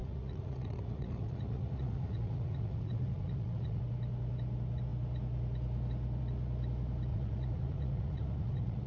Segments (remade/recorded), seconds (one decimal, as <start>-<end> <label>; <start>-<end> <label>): 0.0-3.8 remade; 3.8-7.1 recorded; 7.1-8.9 remade